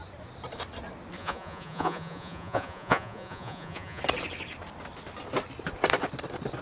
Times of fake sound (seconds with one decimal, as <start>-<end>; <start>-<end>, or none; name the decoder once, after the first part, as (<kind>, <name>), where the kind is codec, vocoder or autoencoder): 1.2-4.0 (vocoder, Vocos)